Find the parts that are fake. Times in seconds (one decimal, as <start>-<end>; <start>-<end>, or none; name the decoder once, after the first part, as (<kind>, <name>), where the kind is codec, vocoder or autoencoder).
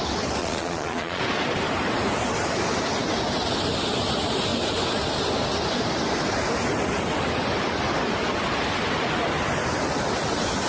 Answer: 0.4-1.2 (vocoder, Vocos)